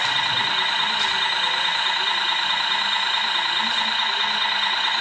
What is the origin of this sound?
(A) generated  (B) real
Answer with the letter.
B